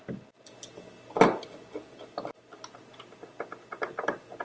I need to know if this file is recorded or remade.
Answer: recorded